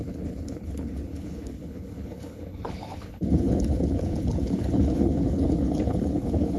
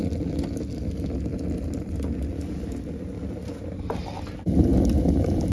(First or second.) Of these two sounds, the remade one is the first